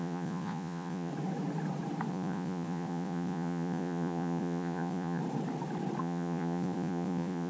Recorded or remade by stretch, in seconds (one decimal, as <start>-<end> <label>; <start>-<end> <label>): 0.0-1.1 remade; 1.1-2.1 recorded; 2.1-5.2 remade; 5.2-6.0 recorded; 6.0-7.5 remade

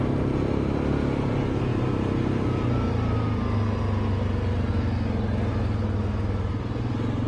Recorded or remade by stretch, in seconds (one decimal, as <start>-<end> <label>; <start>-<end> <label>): 0.0-7.3 recorded